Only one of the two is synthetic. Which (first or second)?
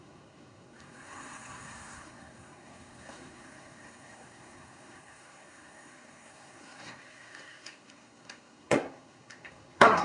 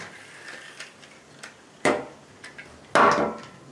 first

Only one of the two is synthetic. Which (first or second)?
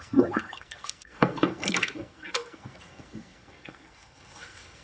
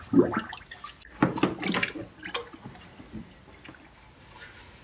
first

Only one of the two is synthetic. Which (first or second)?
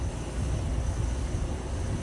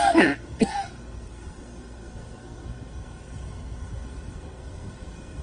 second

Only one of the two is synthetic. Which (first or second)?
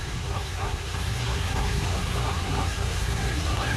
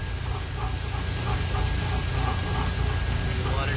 first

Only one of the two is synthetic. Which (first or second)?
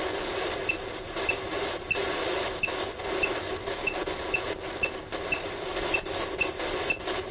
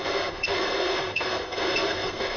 second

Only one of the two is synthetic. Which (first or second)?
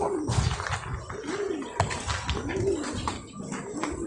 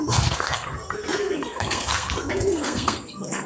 second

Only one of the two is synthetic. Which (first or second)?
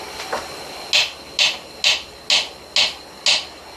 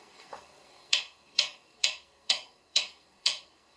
second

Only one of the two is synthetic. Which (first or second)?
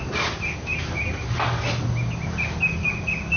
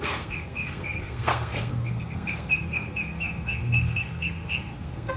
second